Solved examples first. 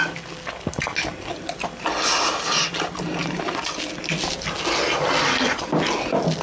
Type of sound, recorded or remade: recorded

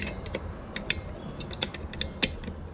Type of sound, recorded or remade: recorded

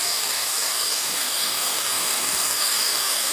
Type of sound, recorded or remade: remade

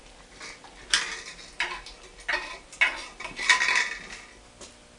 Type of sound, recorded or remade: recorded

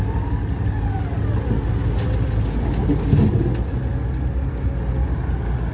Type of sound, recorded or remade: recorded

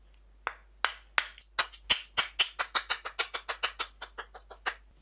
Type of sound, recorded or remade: recorded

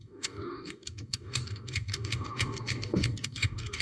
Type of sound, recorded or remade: remade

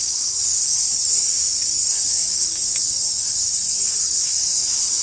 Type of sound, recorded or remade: remade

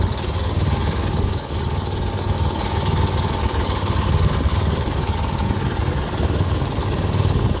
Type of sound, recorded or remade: remade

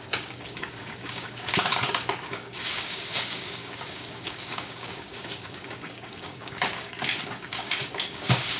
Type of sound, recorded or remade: remade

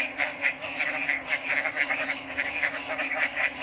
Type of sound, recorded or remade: remade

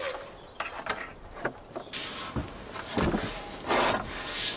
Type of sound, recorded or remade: recorded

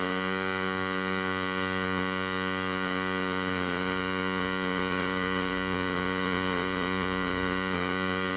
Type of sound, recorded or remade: remade